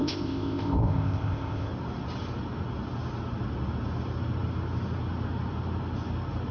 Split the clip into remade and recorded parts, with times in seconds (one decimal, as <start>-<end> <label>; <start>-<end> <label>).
0.0-1.7 remade; 1.7-6.5 recorded